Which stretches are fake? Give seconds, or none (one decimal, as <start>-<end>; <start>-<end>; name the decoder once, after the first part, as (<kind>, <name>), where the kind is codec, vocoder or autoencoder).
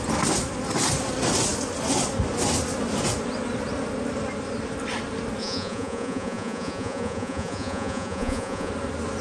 5.4-8.7 (vocoder, Vocos)